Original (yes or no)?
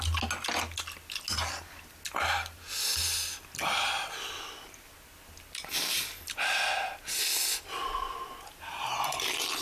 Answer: yes